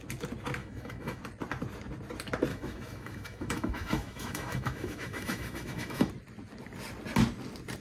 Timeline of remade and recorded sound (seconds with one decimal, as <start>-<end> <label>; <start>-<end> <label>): 0.0-0.6 recorded; 0.6-1.2 remade; 1.2-2.5 recorded; 2.5-6.1 remade; 6.1-7.8 recorded